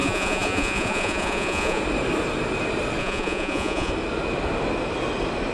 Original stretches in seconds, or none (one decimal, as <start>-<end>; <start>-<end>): 1.8-3.0; 3.9-5.5